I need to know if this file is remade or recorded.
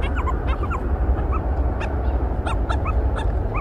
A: recorded